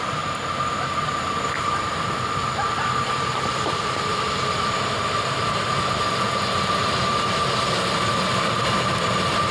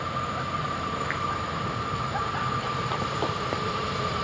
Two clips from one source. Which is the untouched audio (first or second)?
first